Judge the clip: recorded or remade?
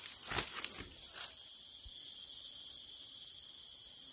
recorded